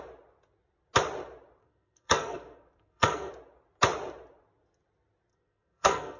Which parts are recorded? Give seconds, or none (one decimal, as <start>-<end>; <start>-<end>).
0.0-1.6; 3.3-5.3

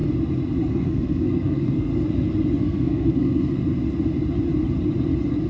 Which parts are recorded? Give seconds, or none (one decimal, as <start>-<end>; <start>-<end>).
0.0-0.7; 1.9-2.6; 3.6-5.5

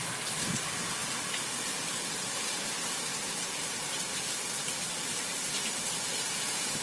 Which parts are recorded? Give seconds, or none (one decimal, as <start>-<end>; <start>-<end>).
0.0-3.1; 5.5-6.8